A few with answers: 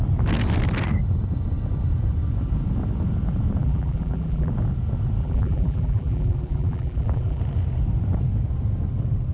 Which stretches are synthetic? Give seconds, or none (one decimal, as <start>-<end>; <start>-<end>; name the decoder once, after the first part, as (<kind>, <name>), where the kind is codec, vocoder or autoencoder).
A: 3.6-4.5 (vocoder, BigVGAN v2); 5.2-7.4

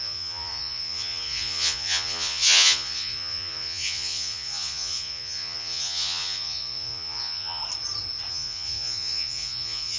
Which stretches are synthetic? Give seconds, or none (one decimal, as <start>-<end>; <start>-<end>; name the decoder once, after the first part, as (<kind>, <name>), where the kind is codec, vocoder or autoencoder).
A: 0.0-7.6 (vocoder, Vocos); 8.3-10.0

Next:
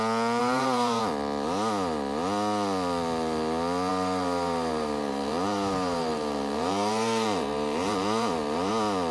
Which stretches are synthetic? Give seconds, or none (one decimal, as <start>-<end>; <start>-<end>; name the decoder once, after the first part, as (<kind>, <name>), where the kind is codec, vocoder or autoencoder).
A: 0.4-1.0 (vocoder, BigVGAN v2); 3.9-8.7

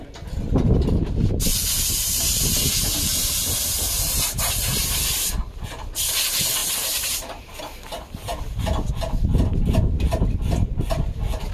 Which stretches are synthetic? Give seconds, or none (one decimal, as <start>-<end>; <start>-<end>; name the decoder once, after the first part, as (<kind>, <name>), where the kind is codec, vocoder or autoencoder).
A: 1.5-5.3 (vocoder, BigVGAN v2); 6.6-7.6